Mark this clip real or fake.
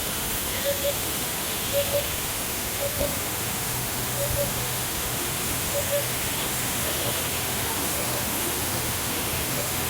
fake